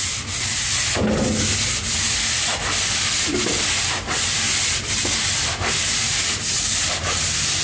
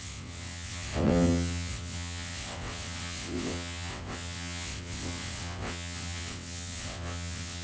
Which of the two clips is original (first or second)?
first